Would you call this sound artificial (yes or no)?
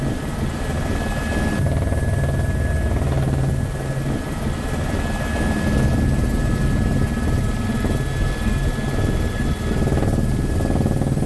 no